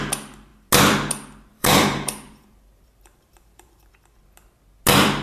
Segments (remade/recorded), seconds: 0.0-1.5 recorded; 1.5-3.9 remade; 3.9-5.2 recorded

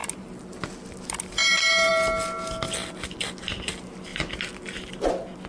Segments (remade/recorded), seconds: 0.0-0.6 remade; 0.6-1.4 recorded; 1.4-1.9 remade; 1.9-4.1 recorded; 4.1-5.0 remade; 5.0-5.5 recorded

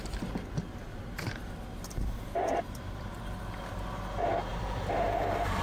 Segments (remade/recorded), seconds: 0.0-0.9 recorded; 0.9-3.4 remade; 3.4-4.5 recorded; 4.5-5.6 remade

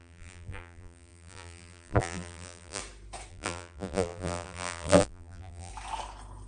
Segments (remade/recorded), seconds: 0.0-2.8 remade; 2.8-3.3 recorded; 3.3-5.7 remade; 5.7-6.5 recorded